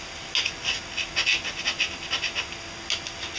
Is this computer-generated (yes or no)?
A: no